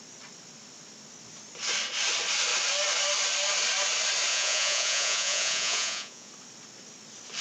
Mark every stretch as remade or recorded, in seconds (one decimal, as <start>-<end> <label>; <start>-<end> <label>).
0.0-4.3 recorded; 4.3-6.3 remade; 6.3-7.4 recorded